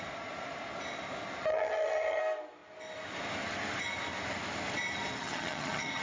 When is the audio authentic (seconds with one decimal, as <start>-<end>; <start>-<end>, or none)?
0.0-1.5; 2.2-5.2